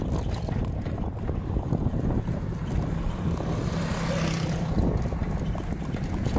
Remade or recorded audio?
recorded